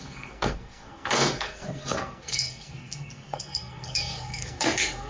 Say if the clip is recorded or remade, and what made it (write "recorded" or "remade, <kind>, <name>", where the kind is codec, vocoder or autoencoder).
remade, codec, SNAC